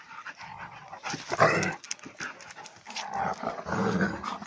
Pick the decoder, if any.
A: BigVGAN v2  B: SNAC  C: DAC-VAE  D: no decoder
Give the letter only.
D